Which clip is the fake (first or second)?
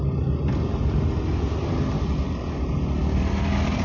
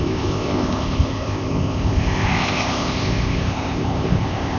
second